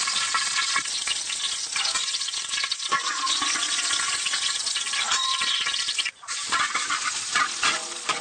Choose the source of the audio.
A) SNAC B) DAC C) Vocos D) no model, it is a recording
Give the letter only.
C